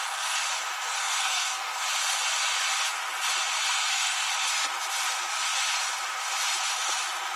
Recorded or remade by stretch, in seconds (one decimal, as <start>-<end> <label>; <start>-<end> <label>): 0.0-1.0 recorded; 1.0-1.8 remade; 1.8-3.6 recorded; 3.6-4.3 remade; 4.3-7.4 recorded